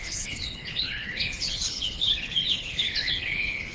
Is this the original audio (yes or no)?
no